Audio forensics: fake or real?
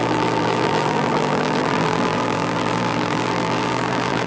fake